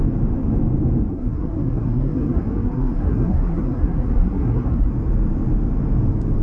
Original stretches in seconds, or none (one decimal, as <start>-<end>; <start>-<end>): 0.0-1.1; 4.9-6.4

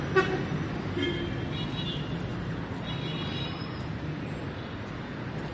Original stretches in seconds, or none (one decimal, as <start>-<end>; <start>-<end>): 0.0-5.5

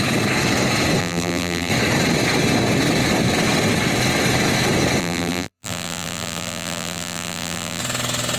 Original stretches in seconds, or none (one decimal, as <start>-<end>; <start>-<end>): 0.0-1.0; 1.7-5.0; 7.8-8.4